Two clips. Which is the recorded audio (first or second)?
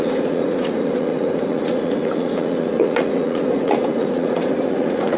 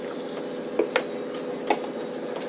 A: second